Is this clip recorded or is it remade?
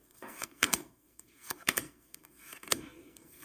remade